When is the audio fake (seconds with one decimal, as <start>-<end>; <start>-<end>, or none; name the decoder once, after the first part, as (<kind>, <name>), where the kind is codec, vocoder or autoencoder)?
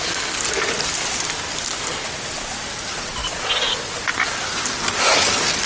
none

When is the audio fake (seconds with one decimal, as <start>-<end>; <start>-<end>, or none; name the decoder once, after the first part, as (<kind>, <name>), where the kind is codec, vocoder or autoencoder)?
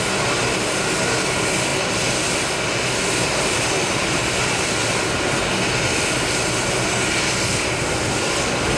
none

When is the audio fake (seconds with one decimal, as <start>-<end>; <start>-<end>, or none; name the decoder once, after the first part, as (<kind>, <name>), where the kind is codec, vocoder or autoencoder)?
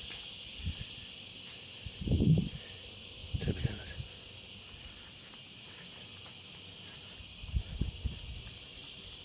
none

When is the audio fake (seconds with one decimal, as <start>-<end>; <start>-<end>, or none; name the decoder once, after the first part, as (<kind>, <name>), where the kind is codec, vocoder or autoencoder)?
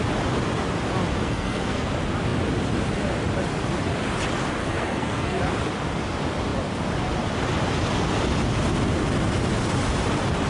1.2-1.9 (codec, SNAC); 4.6-5.4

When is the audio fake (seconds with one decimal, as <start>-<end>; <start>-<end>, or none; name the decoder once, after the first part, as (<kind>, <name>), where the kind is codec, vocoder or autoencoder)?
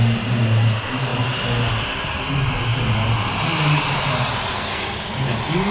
4.5-5.1 (codec, SNAC)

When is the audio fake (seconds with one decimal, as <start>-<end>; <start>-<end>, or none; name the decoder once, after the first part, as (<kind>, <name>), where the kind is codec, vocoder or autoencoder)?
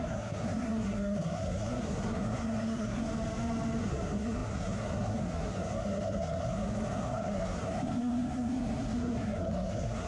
0.0-3.1 (codec, SNAC); 3.8-10.1